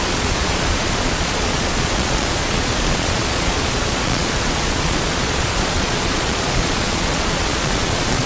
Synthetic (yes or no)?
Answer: yes